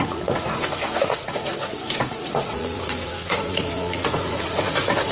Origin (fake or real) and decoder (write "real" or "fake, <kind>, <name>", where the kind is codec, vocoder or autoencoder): fake, vocoder, Vocos